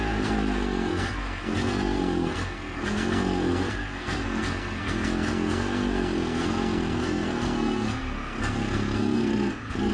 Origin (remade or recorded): remade